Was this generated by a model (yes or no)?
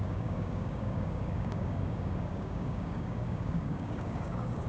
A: yes